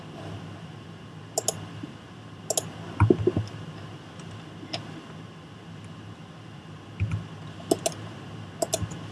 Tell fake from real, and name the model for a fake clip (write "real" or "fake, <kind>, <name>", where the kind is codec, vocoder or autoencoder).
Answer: real